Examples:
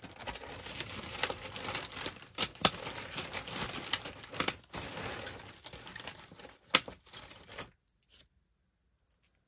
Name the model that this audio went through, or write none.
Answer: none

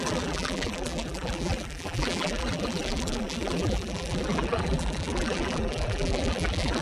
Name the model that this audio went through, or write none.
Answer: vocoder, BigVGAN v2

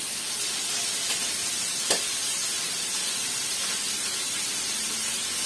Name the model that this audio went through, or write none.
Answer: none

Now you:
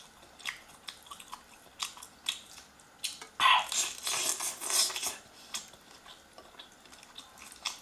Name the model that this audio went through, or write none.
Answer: none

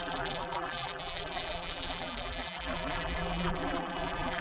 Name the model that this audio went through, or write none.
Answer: vocoder, BigVGAN v2